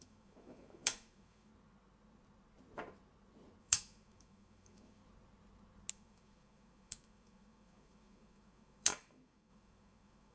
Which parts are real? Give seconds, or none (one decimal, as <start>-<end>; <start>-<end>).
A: 1.5-3.6; 5.0-5.9

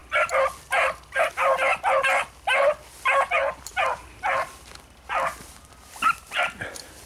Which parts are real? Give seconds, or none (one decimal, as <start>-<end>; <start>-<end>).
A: 0.0-3.4; 6.3-7.1